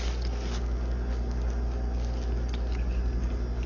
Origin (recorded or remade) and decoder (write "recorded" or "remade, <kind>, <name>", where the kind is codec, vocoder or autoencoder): recorded